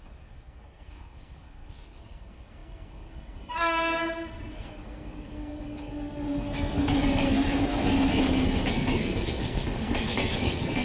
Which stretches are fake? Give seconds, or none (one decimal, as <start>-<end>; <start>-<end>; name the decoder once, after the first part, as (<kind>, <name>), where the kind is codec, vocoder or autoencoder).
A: 0.0-10.8 (codec, SNAC)